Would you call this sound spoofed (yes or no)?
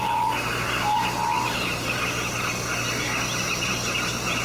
no